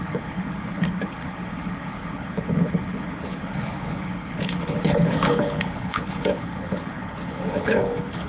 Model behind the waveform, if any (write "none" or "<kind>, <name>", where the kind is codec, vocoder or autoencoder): codec, HILCodec